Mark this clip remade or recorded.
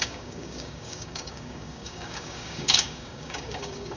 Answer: remade